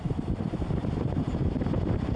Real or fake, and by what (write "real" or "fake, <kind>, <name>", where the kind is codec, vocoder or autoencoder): fake, vocoder, BigVGAN v2